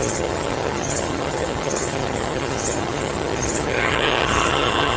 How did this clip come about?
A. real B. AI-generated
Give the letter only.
B